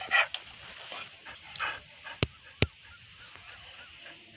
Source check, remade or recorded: recorded